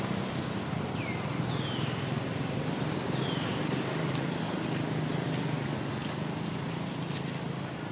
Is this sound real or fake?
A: real